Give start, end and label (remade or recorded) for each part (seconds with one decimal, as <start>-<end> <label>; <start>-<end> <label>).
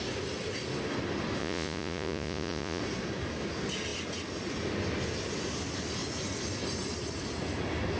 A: 0.0-1.4 recorded; 1.4-2.8 remade; 2.8-8.0 recorded